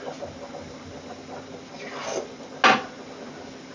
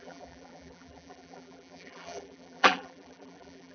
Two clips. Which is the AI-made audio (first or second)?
second